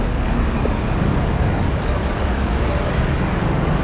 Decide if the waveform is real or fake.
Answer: fake